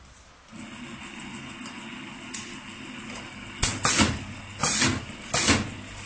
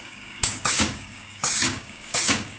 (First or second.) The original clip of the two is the first